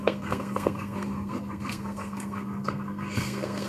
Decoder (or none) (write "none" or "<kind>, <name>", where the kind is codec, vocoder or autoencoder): codec, SNAC